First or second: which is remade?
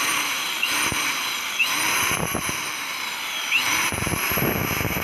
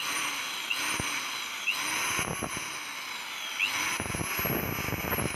first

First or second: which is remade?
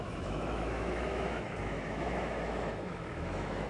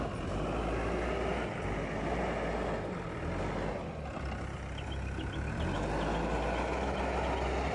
first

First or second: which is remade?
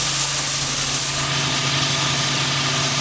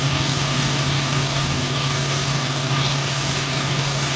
second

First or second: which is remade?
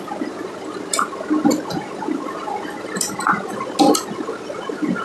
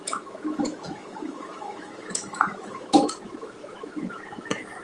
second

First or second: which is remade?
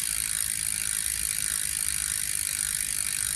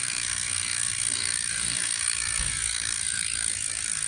second